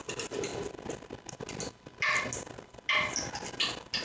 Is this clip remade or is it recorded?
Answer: recorded